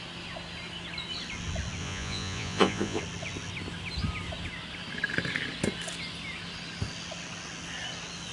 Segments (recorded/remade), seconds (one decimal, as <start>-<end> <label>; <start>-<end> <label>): 0.0-1.8 recorded; 1.8-3.0 remade; 3.0-8.3 recorded